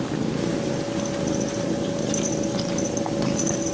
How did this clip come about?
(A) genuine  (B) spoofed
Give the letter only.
A